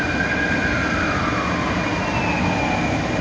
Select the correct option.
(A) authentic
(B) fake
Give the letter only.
A